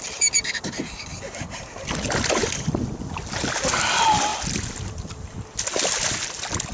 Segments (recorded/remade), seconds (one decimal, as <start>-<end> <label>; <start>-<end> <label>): 0.0-6.7 recorded